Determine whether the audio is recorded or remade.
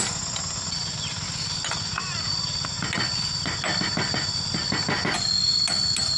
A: recorded